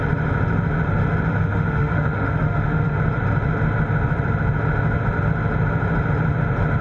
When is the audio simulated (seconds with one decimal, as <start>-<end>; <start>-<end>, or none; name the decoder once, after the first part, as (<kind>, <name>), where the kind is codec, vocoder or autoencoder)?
1.3-3.0 (autoencoder, DAC-VAE)